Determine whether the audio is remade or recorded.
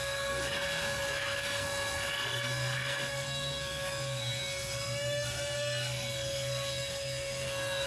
remade